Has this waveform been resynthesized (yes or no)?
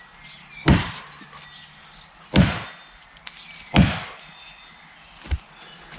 no